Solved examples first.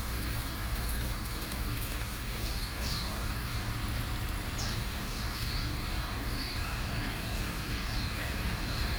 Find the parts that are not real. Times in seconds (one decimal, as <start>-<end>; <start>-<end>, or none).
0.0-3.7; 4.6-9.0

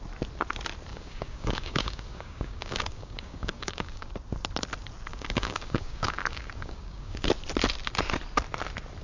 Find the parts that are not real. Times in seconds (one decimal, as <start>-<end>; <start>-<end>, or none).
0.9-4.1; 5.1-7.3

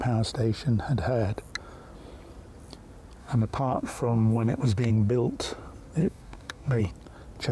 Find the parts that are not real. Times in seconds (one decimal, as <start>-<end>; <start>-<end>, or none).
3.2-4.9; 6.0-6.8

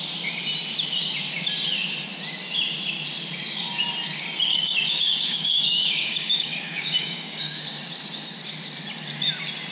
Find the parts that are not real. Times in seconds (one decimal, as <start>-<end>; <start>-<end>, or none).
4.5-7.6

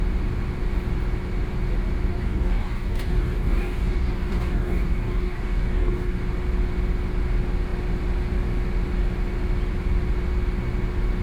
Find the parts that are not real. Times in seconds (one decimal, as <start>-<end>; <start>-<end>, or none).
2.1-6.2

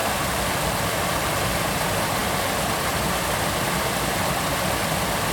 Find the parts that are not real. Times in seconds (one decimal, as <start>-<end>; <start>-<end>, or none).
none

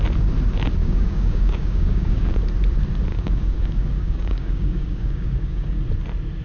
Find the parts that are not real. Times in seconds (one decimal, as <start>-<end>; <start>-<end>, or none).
0.8-2.3; 3.1-5.8

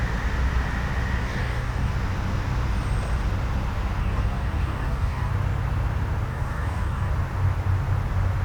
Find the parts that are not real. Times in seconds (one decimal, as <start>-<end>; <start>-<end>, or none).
1.2-1.9; 4.0-5.3; 6.3-7.1